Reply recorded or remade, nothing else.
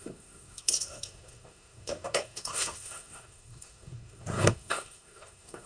remade